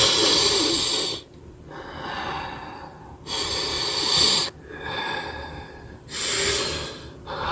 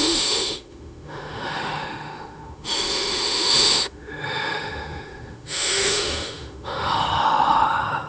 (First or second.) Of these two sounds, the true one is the first